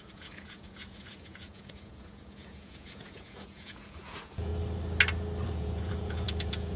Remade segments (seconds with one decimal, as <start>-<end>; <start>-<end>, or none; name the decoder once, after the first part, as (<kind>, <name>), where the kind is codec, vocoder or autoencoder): 0.0-4.5 (vocoder, Vocos); 5.5-6.8